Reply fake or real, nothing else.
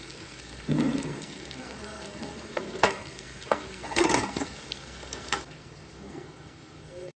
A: fake